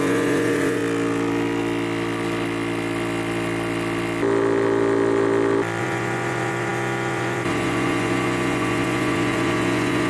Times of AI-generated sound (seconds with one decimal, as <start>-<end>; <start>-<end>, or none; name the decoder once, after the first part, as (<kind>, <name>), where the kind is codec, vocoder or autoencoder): 0.0-0.8 (vocoder, Vocos); 5.8-10.1